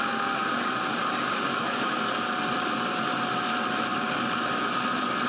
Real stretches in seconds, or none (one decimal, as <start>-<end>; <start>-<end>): 0.0-1.5; 2.0-5.3